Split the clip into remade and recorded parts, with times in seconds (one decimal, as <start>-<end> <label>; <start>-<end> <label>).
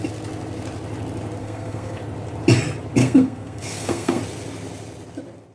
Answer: 0.0-1.4 recorded; 1.4-2.0 remade; 2.0-3.0 recorded; 3.0-4.2 remade; 4.2-5.5 recorded